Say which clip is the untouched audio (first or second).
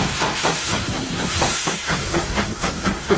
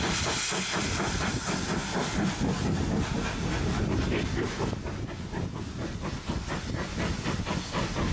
second